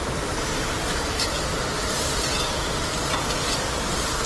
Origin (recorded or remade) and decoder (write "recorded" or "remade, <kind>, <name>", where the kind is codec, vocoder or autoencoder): recorded